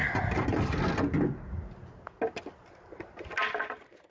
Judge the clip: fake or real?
real